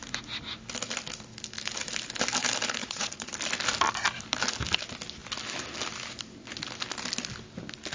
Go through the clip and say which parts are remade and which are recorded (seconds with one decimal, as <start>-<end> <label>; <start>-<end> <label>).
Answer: 0.0-2.8 recorded; 2.8-3.3 remade; 3.3-7.9 recorded